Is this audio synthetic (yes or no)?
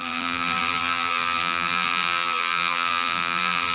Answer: yes